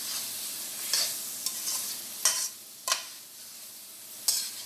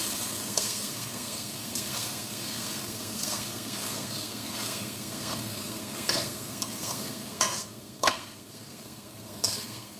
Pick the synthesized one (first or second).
second